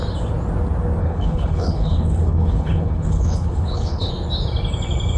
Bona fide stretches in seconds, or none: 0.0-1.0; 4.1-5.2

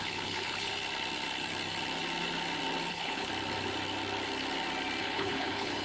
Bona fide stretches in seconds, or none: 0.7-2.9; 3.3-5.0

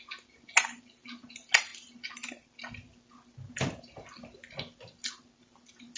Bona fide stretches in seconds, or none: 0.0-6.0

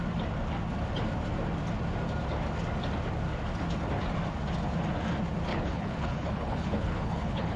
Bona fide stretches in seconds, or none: 0.0-5.5